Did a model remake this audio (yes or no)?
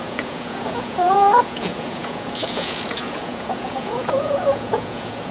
yes